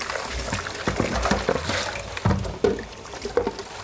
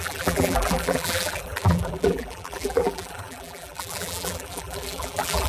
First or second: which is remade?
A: second